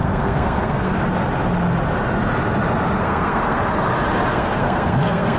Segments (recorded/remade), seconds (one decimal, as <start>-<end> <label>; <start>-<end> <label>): 0.0-0.9 remade; 0.9-3.0 recorded; 3.0-3.6 remade; 3.6-4.3 recorded; 4.3-5.4 remade